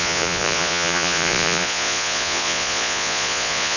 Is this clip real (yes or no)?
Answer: no